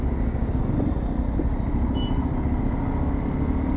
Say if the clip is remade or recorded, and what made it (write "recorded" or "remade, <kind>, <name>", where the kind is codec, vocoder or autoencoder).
recorded